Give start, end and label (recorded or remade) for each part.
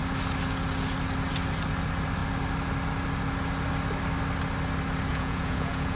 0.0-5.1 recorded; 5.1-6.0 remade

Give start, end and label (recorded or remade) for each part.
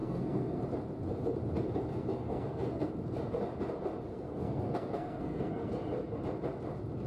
0.0-0.6 remade; 0.6-1.9 recorded; 1.9-2.9 remade; 2.9-4.1 recorded; 4.1-5.7 remade; 5.7-7.1 recorded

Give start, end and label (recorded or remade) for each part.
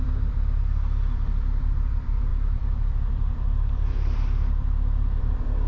0.0-5.7 remade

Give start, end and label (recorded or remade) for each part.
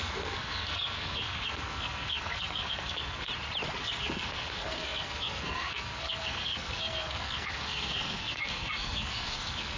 0.0-3.3 remade; 3.3-3.8 recorded; 3.8-9.8 remade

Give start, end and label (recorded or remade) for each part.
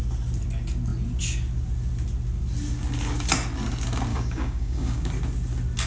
0.0-4.1 recorded; 4.1-5.1 remade; 5.1-5.9 recorded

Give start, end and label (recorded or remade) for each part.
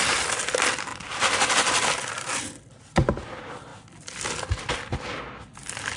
0.0-6.0 recorded